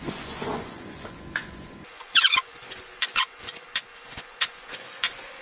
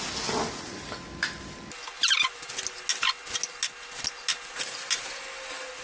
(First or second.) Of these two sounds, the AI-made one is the first